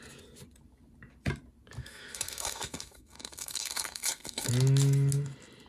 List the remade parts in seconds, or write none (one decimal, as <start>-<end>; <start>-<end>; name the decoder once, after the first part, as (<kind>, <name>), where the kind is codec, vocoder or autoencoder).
1.8-4.5 (codec, SNAC)